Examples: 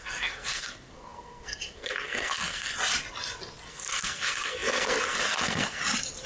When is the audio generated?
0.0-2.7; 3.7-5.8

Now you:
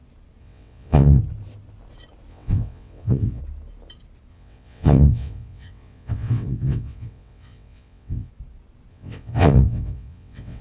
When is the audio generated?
0.4-1.2; 2.3-3.4; 4.3-8.3; 8.9-10.6